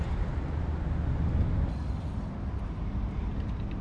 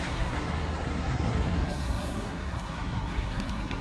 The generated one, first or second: second